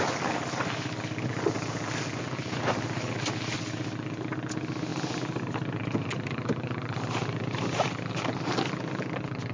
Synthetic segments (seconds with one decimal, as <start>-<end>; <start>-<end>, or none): 4.9-8.1